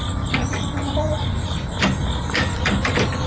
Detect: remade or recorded recorded